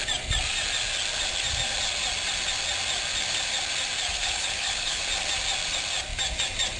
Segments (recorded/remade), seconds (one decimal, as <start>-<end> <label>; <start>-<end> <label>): 0.0-4.1 recorded; 4.1-5.0 remade; 5.0-6.8 recorded